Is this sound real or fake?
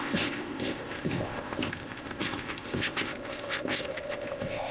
fake